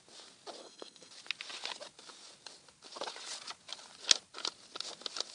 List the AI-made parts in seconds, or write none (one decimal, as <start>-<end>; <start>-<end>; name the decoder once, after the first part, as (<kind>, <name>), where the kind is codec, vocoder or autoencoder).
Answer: 0.6-1.1 (codec, SNAC)